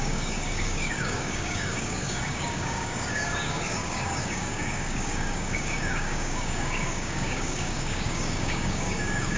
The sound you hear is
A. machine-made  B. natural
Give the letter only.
A